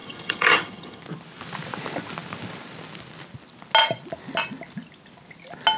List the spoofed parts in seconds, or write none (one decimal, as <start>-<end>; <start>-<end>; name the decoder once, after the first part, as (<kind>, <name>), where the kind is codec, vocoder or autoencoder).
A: 0.0-1.0 (vocoder, HiFi-GAN)